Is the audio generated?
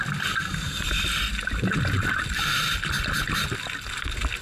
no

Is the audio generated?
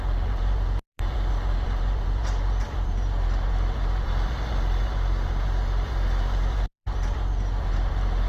yes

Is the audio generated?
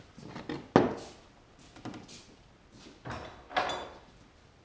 no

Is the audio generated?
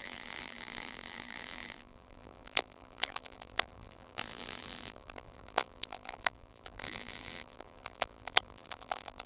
yes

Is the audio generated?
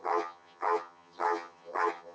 yes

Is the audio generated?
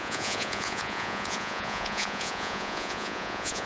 yes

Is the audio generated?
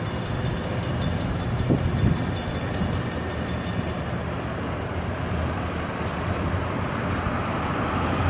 no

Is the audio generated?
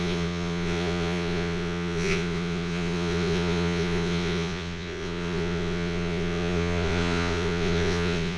yes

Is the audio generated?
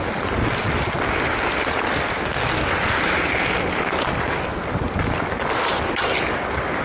no